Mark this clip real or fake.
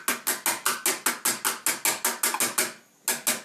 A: real